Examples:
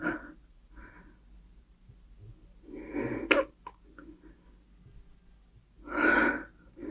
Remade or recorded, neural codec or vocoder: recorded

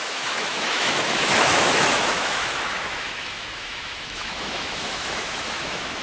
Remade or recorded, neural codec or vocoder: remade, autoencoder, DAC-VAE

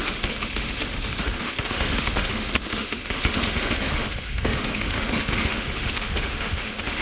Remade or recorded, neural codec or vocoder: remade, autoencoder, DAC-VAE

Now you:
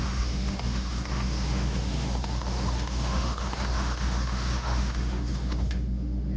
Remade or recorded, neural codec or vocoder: remade, autoencoder, DAC-VAE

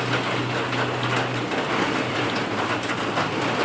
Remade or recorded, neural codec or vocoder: recorded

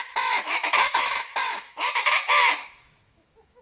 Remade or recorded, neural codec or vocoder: remade, autoencoder, DAC-VAE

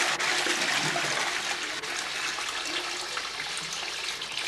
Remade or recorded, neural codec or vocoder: recorded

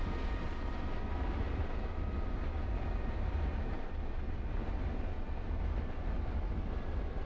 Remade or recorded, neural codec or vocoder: recorded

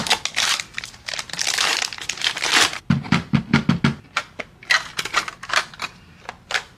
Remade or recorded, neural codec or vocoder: recorded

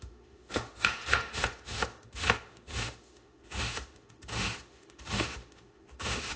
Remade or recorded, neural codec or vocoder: remade, autoencoder, DAC-VAE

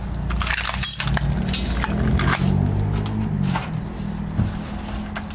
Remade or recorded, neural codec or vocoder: recorded